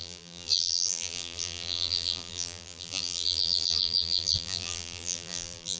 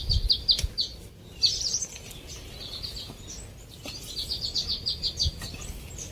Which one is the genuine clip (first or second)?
second